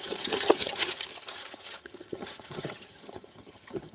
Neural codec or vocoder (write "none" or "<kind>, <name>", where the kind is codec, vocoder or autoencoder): vocoder, HiFi-GAN